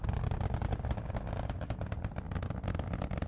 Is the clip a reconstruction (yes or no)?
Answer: no